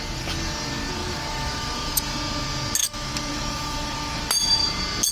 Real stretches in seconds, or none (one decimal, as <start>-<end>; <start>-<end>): 0.0-1.0; 2.0-2.8; 4.2-5.1